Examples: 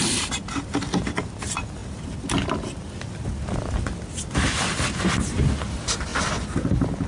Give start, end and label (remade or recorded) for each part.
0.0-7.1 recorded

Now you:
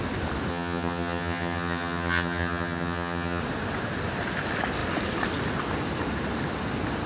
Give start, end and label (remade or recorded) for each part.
0.0-0.5 recorded; 0.5-3.4 remade; 3.4-7.1 recorded

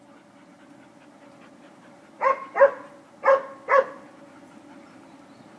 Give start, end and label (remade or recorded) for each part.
0.0-5.6 recorded

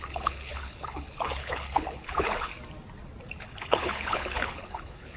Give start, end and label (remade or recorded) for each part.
0.0-2.5 remade; 2.5-3.4 recorded; 3.4-5.2 remade

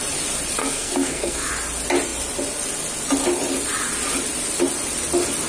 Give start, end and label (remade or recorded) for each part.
0.0-0.6 recorded; 0.6-1.5 remade; 1.5-5.5 recorded

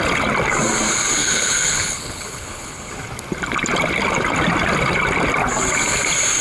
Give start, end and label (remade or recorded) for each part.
0.0-1.2 recorded; 1.2-2.9 remade; 2.9-6.4 recorded

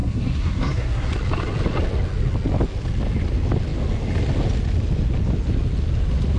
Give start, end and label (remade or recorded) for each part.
0.0-1.1 remade; 1.1-6.4 recorded